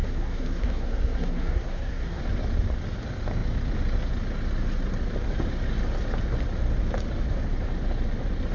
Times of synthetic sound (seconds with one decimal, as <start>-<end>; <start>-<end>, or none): 0.0-2.2